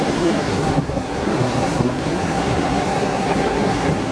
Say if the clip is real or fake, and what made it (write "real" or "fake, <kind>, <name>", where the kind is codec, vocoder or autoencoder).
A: fake, codec, SNAC